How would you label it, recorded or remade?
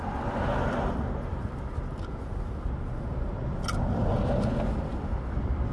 recorded